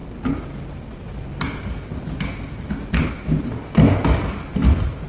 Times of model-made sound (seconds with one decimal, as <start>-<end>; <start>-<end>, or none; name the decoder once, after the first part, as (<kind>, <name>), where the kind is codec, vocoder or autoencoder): none